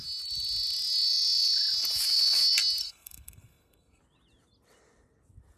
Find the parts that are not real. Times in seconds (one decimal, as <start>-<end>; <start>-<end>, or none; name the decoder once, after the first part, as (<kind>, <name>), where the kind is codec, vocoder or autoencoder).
2.8-4.0 (codec, SNAC)